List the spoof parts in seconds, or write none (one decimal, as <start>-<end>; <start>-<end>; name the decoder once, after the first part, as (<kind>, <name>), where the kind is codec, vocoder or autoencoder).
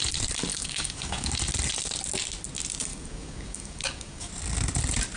0.5-1.3 (codec, DAC); 2.9-4.3